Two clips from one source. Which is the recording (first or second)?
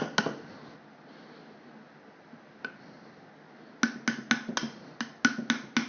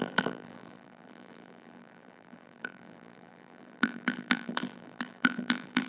first